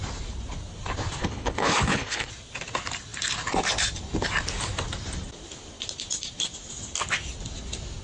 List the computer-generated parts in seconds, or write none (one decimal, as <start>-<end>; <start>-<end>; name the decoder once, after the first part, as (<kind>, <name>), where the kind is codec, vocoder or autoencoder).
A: 1.2-2.3 (codec, HILCodec)